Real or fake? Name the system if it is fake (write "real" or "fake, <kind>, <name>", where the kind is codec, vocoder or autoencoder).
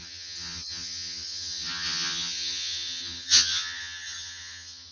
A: fake, vocoder, HiFi-GAN